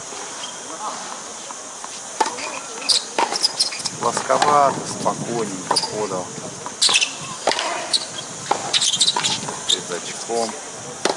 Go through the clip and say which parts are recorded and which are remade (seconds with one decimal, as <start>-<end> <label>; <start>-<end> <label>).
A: 0.0-8.6 recorded; 8.6-9.7 remade; 9.7-11.2 recorded